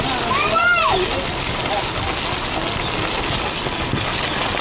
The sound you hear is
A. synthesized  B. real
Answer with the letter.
B